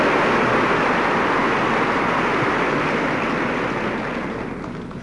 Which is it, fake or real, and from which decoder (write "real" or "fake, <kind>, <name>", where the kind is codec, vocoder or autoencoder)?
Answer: real